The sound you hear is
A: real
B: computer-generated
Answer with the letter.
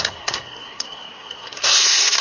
B